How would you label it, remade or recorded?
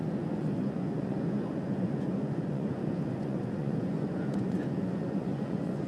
remade